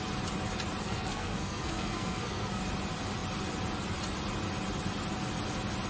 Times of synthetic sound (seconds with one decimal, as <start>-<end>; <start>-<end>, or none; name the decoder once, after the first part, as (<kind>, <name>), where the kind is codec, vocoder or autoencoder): 0.8-2.6 (codec, SNAC)